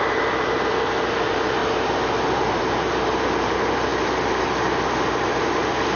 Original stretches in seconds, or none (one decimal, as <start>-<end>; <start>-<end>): 0.0-6.0